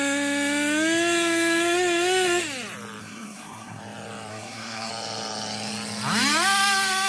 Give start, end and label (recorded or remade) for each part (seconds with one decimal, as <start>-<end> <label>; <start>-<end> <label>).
0.0-3.0 recorded; 3.0-3.8 remade; 3.8-4.3 recorded; 4.3-4.9 remade; 4.9-7.1 recorded